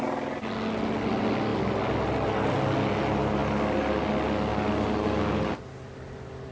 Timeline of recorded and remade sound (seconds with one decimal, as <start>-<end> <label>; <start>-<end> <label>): 0.0-6.5 recorded